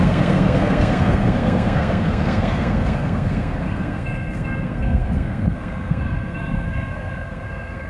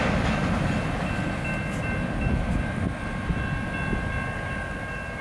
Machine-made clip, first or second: first